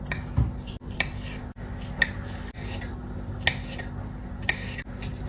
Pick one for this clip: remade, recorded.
recorded